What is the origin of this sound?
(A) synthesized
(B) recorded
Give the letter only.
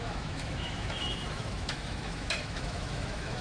A